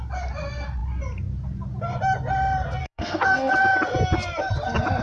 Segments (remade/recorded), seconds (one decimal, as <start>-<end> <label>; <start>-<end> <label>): 0.0-2.8 recorded; 2.8-3.5 remade; 3.5-5.0 recorded